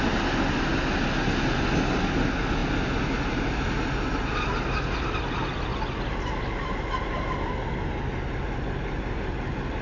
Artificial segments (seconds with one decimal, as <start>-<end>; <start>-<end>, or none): none